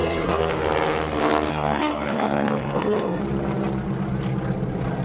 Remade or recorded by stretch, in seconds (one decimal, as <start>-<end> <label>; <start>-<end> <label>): 0.0-0.5 remade; 0.5-1.5 recorded; 1.5-3.2 remade; 3.2-5.0 recorded